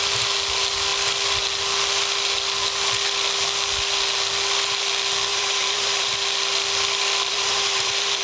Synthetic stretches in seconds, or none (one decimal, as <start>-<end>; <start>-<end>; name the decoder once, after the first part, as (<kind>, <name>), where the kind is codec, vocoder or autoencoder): 5.3-6.1 (vocoder, BigVGAN v2); 7.3-8.2